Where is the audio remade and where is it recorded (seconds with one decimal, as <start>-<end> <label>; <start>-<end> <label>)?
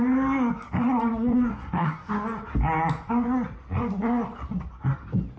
0.0-1.3 recorded; 1.3-2.1 remade; 2.1-5.4 recorded